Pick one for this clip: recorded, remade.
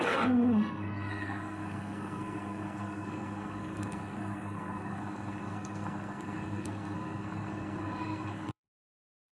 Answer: remade